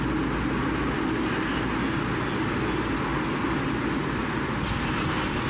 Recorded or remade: recorded